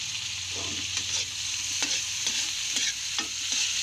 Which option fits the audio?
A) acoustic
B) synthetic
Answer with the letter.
A